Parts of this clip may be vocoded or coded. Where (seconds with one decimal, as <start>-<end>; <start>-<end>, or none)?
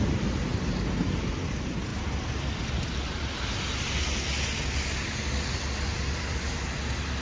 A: none